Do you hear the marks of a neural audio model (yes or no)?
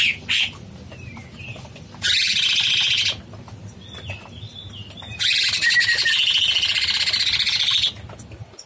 no